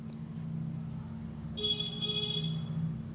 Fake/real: real